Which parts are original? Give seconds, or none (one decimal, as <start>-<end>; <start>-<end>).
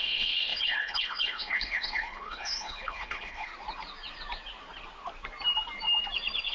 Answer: 3.5-6.5